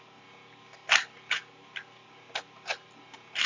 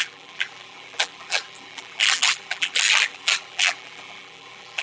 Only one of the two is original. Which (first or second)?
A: first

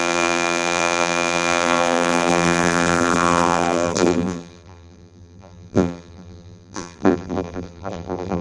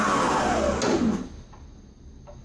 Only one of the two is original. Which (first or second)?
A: second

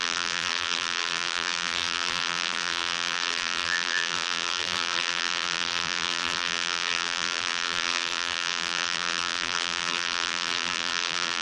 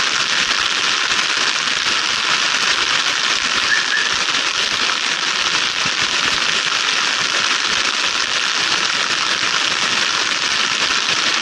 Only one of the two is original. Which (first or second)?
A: second